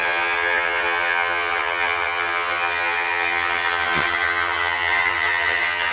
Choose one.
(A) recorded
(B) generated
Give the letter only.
B